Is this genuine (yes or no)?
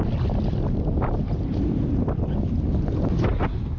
yes